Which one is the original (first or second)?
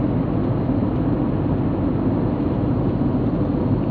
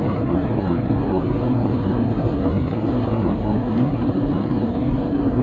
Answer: first